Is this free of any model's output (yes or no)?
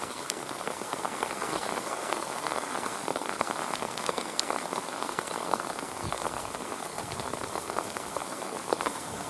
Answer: no